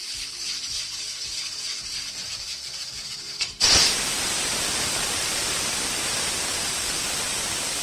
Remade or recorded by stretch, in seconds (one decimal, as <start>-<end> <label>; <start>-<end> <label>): 0.0-4.1 recorded; 4.1-6.2 remade; 6.2-7.8 recorded